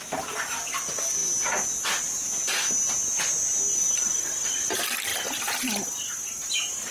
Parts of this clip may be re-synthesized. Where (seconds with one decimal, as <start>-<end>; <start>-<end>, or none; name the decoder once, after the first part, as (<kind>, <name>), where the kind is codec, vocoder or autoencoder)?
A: none